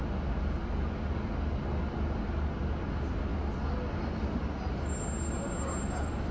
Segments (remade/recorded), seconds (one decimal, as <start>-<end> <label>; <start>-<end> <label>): 0.0-6.3 recorded